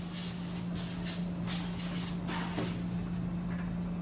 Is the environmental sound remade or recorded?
recorded